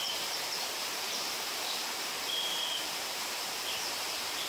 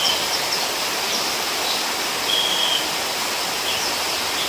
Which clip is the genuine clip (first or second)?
second